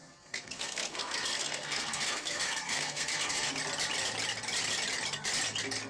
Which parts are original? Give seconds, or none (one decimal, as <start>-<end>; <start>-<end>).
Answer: 3.5-5.9